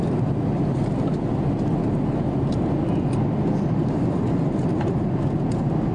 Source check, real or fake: real